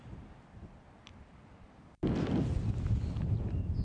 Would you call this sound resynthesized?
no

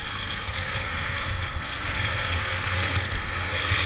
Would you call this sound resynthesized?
yes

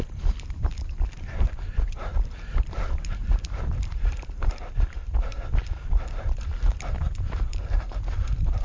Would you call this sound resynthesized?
yes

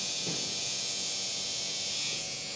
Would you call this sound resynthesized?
yes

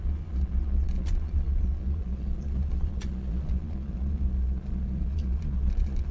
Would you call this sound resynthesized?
yes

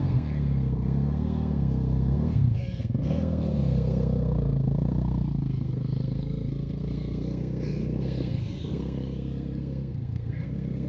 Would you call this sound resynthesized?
yes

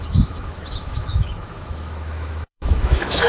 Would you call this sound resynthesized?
yes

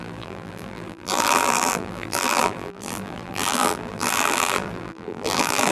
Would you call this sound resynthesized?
yes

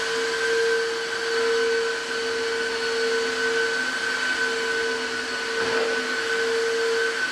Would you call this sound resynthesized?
no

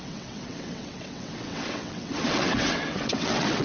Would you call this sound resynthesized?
yes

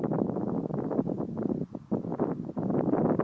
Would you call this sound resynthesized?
no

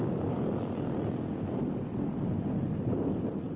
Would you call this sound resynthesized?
no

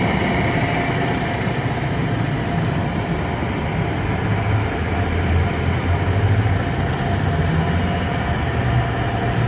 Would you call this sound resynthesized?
no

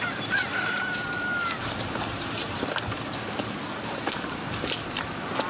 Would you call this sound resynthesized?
yes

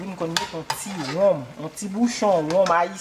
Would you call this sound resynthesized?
no